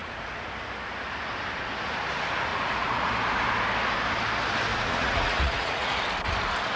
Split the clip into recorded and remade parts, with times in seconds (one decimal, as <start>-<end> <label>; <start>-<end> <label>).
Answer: 0.0-0.5 remade; 0.5-2.5 recorded; 2.5-3.1 remade; 3.1-4.7 recorded; 4.7-6.0 remade; 6.0-6.8 recorded